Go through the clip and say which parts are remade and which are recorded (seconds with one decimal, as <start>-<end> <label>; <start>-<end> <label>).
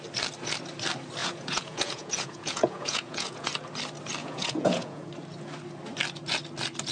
0.0-1.2 recorded; 1.2-3.5 remade; 3.5-4.2 recorded; 4.2-5.1 remade; 5.1-6.9 recorded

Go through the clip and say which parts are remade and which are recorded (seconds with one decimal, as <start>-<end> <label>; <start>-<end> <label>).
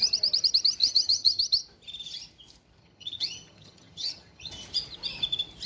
0.0-0.8 recorded; 0.8-1.4 remade; 1.4-2.8 recorded; 2.8-4.5 remade; 4.5-5.7 recorded